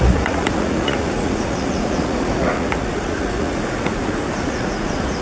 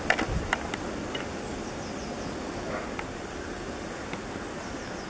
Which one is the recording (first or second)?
second